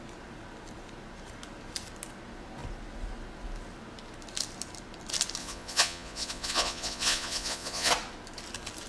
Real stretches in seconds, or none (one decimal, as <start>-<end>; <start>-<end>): 0.0-5.4; 7.9-8.9